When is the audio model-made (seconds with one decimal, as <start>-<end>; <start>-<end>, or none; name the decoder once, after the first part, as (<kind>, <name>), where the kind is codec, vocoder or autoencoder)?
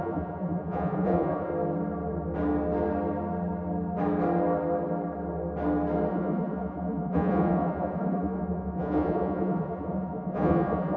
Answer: 0.0-1.5 (vocoder, Vocos); 6.1-11.0